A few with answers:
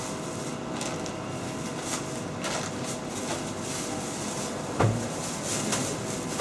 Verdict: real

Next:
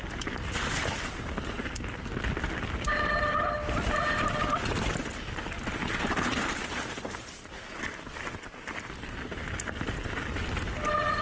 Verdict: real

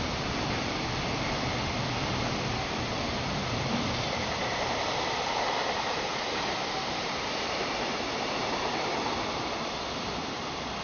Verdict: fake